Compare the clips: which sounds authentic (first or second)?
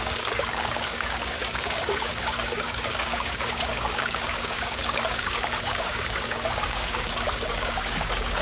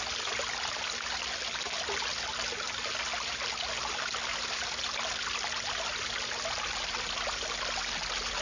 second